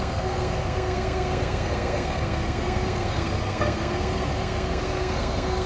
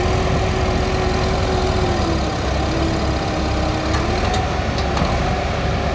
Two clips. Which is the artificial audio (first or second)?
first